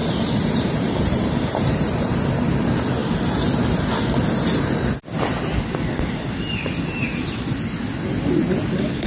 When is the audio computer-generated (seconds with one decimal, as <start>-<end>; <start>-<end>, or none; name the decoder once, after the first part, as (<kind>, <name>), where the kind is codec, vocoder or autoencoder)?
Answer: 0.0-2.1 (vocoder, BigVGAN v2)